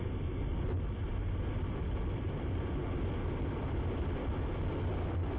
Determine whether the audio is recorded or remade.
recorded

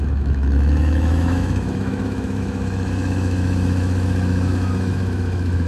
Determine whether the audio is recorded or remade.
remade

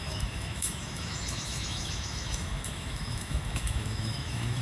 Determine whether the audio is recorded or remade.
remade